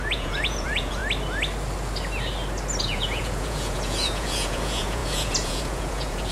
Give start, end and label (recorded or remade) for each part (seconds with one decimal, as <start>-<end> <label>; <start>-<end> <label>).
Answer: 0.0-1.0 remade; 1.0-2.8 recorded; 2.8-6.3 remade